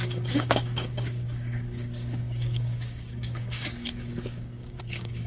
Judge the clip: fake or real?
fake